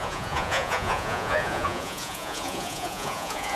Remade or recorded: remade